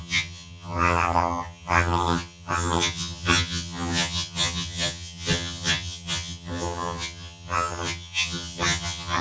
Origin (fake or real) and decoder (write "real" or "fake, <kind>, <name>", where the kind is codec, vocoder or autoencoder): fake, vocoder, HiFi-GAN